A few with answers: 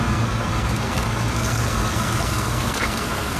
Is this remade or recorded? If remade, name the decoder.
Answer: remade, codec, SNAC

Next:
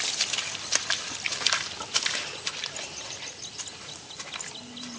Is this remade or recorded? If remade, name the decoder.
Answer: recorded